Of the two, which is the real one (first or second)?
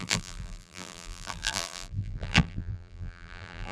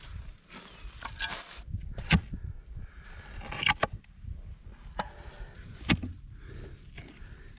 second